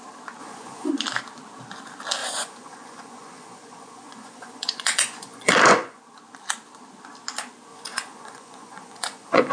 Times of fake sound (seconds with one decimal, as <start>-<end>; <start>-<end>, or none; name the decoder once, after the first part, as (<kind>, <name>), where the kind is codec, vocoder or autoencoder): 0.4-0.9 (vocoder, Vocos); 2.2-6.0; 7.7-9.5